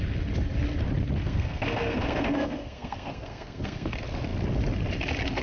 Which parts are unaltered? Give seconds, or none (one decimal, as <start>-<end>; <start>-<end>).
0.0-1.2; 3.9-5.4